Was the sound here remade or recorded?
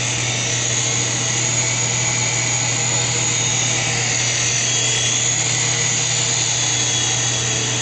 recorded